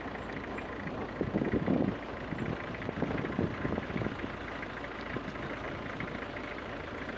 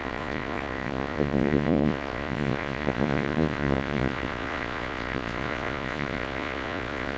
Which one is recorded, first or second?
first